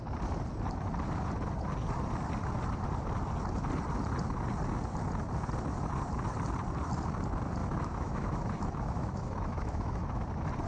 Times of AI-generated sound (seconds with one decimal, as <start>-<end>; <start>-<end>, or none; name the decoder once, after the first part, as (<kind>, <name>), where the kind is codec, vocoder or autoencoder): 7.6-10.1 (autoencoder, DAC-VAE)